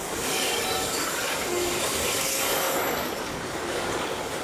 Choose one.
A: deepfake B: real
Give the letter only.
A